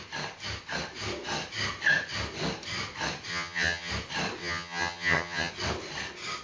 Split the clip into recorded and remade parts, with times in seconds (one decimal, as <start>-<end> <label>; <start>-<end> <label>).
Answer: 0.0-3.3 recorded; 3.3-3.9 remade; 3.9-4.4 recorded; 4.4-5.5 remade; 5.5-6.4 recorded